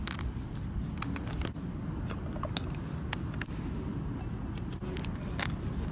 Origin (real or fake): real